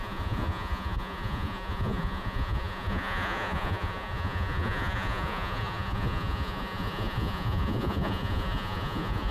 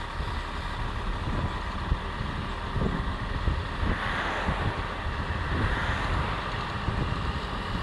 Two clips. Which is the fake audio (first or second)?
first